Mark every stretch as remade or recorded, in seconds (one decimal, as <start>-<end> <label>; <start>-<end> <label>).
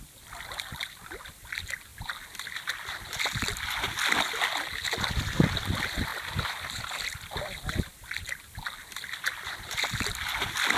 0.0-10.8 recorded